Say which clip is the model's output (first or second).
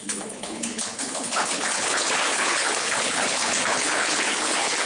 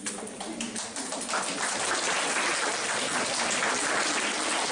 first